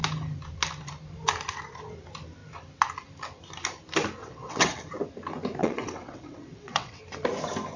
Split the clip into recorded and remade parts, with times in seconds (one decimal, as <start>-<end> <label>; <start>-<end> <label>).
0.0-4.2 recorded; 4.2-4.9 remade; 4.9-5.6 recorded; 5.6-7.0 remade; 7.0-7.8 recorded